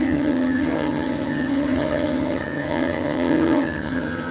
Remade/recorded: remade